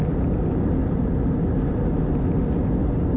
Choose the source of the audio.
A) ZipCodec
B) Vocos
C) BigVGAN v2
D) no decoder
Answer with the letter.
D